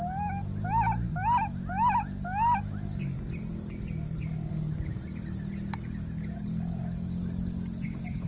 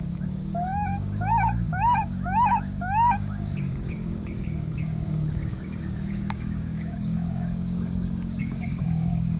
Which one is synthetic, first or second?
second